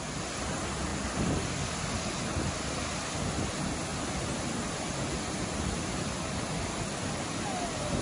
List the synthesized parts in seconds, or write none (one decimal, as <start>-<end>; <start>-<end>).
none